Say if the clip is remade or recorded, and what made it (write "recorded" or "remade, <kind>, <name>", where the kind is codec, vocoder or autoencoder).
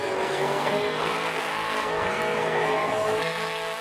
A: remade, codec, SNAC